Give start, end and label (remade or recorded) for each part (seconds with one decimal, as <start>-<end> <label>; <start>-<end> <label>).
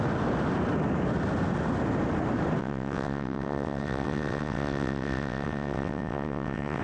0.0-2.6 recorded; 2.6-6.8 remade